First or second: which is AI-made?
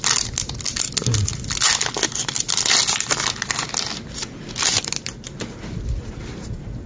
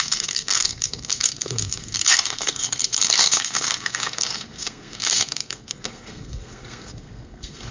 second